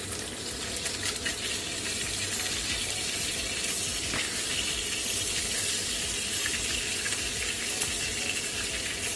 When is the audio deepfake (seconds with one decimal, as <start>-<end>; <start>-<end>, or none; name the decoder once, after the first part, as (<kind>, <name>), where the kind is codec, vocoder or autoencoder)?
none